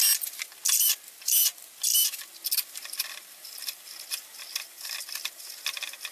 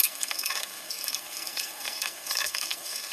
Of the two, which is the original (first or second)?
first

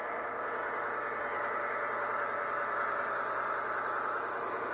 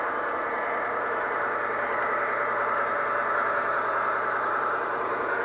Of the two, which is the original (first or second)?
first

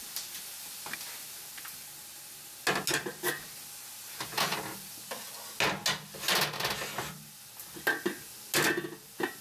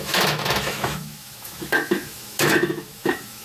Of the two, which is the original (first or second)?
first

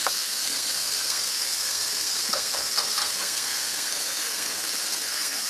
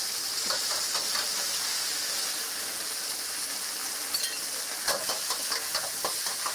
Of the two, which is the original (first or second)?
second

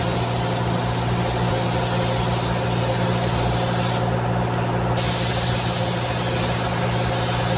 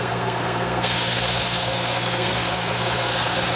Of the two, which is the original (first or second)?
first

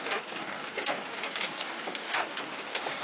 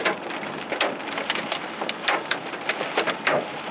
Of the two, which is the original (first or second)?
second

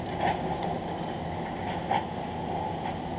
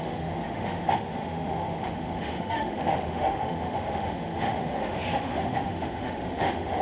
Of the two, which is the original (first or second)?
first